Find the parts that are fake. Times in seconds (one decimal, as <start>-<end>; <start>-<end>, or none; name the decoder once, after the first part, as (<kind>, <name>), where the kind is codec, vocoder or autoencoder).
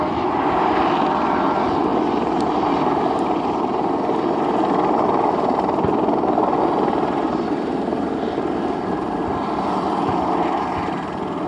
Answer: none